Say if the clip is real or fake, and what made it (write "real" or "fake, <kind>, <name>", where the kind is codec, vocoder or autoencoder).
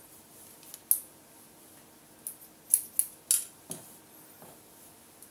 real